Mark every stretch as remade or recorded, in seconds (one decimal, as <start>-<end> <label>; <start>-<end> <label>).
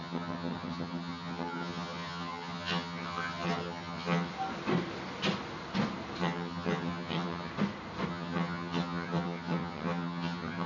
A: 0.0-4.3 remade; 4.3-6.2 recorded; 6.2-7.5 remade; 7.5-8.1 recorded; 8.1-10.7 remade